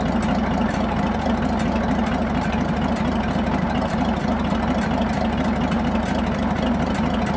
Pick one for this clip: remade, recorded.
recorded